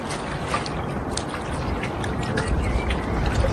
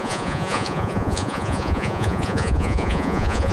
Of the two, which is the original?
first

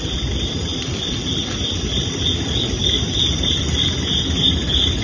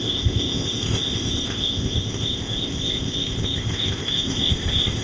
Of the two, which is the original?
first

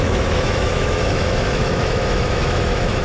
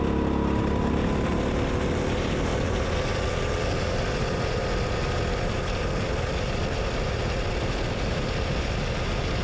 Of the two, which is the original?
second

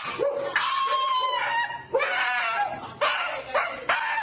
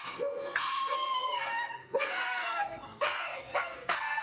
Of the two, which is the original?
first